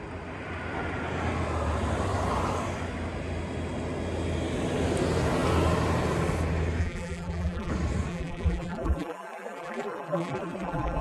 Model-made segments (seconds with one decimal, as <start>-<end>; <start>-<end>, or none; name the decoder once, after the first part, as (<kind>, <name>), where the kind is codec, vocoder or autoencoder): 6.8-7.7 (vocoder, BigVGAN v2); 8.1-11.0